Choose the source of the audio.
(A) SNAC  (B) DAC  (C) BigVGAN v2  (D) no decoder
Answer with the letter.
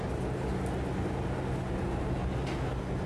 D